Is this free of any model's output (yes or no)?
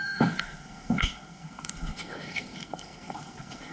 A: no